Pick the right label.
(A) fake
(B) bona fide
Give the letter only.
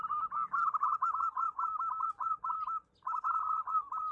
B